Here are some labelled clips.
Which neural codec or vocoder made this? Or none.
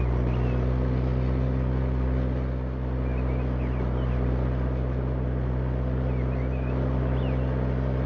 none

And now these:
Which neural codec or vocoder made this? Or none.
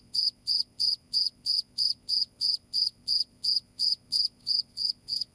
vocoder, Vocos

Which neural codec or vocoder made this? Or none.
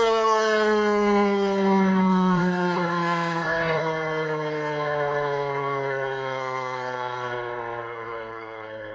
codec, SNAC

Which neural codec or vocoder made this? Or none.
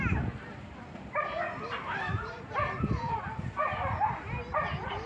vocoder, BigVGAN v2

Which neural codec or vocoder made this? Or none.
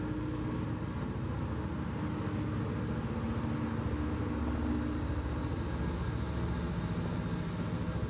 none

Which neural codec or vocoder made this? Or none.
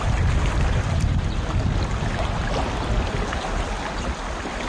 none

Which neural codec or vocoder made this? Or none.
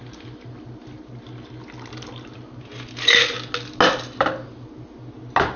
none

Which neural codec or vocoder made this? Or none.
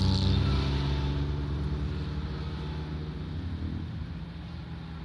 none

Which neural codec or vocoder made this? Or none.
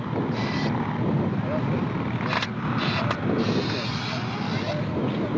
none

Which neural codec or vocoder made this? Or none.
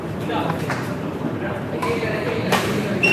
vocoder, BigVGAN v2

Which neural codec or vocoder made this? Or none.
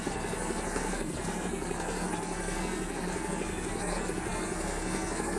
codec, SNAC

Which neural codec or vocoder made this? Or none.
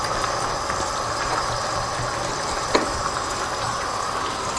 none